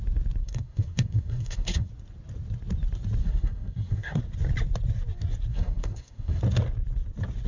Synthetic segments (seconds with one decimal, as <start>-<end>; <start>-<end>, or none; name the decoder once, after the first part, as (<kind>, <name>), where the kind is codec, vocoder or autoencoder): 0.4-1.9 (codec, SNAC); 3.2-4.2; 5.5-6.4